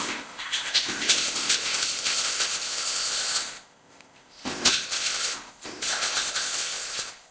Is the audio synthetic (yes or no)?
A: yes